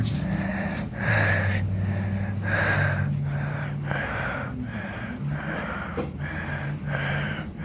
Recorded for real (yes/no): yes